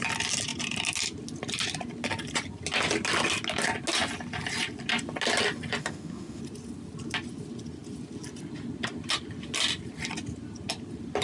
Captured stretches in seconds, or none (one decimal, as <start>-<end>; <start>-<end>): 0.0-5.8; 6.4-11.2